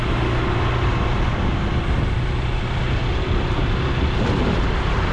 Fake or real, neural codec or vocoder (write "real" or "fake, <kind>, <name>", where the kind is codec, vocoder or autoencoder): real